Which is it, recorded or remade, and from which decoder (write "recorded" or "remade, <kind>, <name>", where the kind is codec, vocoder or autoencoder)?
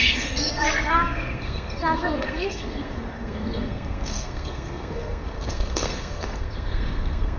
remade, codec, SNAC